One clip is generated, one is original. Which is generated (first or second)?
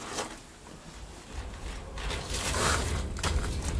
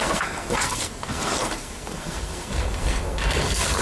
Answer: second